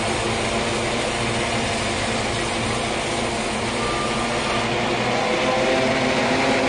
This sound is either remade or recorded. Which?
recorded